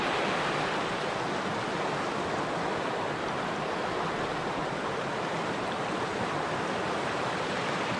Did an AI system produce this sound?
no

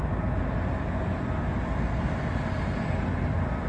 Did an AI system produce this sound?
no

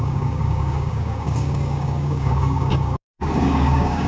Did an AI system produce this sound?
yes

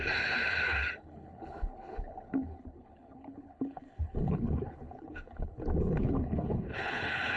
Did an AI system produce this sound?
yes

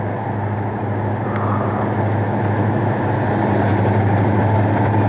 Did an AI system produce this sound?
no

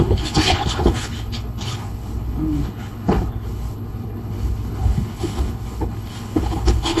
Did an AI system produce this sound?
yes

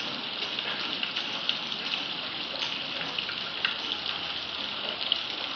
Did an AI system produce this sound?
no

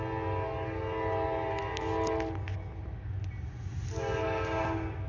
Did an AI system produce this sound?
no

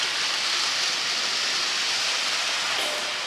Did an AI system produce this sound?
no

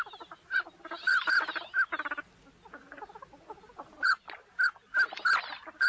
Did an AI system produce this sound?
no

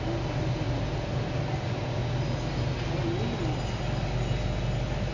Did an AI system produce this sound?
no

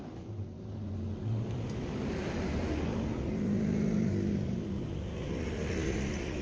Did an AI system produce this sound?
no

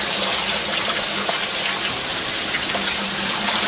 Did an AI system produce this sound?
no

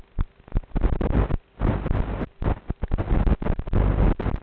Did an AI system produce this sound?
no